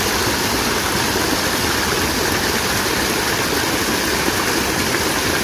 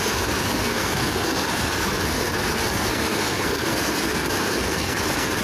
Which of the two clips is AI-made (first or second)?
second